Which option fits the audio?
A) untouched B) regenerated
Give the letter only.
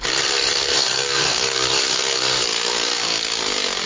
B